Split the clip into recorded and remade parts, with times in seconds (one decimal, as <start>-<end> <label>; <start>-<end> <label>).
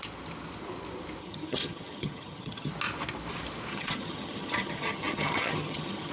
0.0-1.2 recorded; 1.2-2.7 remade; 2.7-3.7 recorded; 3.7-6.1 remade